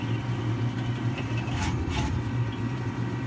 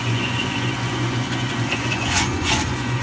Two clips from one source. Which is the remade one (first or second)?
second